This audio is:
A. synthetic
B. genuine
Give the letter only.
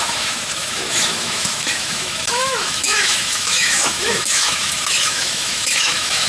A